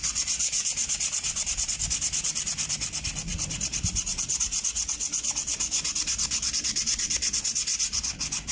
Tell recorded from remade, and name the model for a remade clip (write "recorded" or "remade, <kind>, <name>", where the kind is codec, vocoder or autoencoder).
recorded